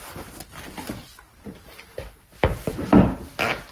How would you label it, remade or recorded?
remade